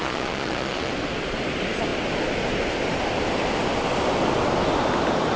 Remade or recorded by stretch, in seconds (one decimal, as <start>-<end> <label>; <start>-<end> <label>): 0.0-0.9 remade; 0.9-5.4 recorded